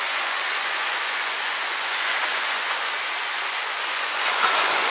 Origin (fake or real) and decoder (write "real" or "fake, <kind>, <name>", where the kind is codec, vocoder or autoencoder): fake, vocoder, Vocos